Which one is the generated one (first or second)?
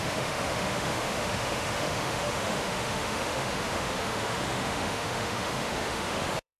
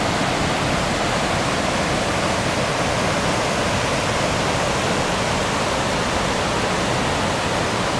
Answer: first